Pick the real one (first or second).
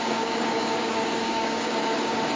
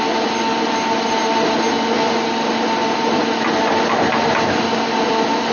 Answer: second